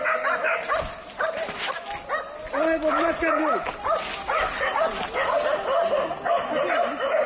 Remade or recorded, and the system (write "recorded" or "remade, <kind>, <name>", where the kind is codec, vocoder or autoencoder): recorded